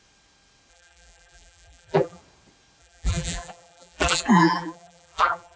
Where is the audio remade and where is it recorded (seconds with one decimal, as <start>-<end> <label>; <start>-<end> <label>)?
0.0-0.7 recorded; 0.7-2.2 remade; 2.2-2.8 recorded; 2.8-5.6 remade